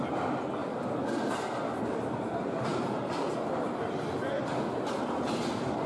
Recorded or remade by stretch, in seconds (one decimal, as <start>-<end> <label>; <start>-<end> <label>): 0.0-5.9 recorded